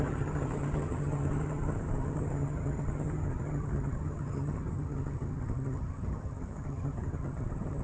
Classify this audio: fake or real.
fake